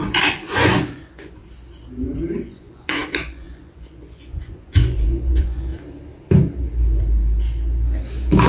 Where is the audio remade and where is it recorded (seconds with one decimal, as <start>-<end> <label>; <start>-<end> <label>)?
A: 0.0-1.4 remade; 1.4-2.4 recorded; 2.4-5.7 remade; 5.7-8.5 recorded